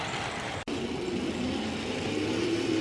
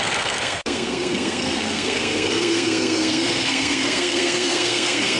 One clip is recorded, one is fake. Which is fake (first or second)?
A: second